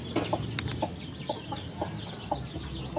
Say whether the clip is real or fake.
real